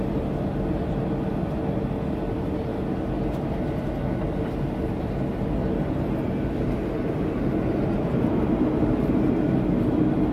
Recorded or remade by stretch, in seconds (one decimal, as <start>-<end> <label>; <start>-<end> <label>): 0.0-10.3 recorded